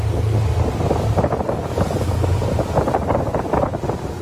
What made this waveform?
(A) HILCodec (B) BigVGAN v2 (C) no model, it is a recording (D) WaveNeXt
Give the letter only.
C